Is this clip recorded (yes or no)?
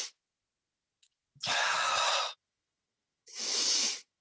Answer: no